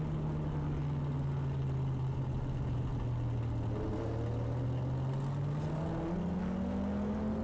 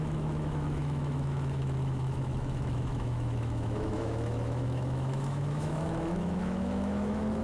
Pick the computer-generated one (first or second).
second